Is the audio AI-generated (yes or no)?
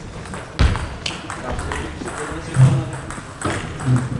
no